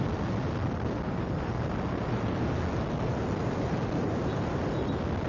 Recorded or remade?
recorded